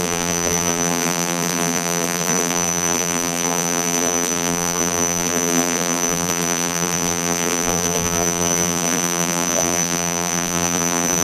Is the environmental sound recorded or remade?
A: remade